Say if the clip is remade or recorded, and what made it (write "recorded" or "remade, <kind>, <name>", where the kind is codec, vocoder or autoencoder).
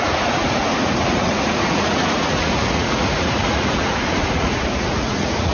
remade, vocoder, Vocos